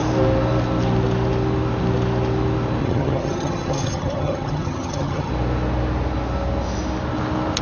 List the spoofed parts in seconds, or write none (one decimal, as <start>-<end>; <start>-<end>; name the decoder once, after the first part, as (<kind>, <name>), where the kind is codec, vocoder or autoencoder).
2.8-5.3 (vocoder, HiFi-GAN)